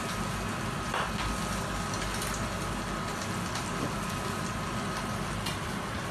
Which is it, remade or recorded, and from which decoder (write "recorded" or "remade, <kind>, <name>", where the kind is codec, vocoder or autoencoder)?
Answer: recorded